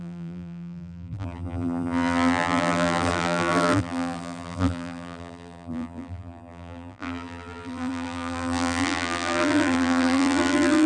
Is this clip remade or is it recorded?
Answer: remade